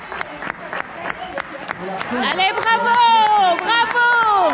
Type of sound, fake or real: real